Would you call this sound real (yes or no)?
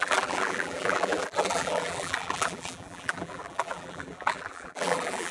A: no